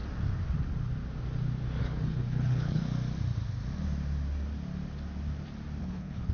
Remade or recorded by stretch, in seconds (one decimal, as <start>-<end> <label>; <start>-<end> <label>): 0.0-1.8 recorded; 1.8-2.8 remade; 2.8-5.8 recorded; 5.8-6.3 remade

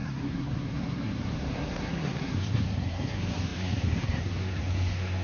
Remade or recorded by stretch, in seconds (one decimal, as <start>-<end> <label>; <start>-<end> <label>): 0.0-5.2 remade